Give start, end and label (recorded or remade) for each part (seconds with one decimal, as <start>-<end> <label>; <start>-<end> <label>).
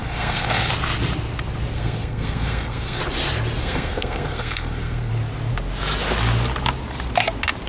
0.0-0.7 remade; 0.7-1.7 recorded; 1.7-3.0 remade; 3.0-3.6 recorded; 3.6-5.1 remade; 5.1-7.7 recorded